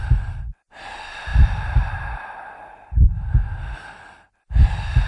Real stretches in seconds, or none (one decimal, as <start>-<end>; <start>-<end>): 0.0-1.3; 3.1-5.1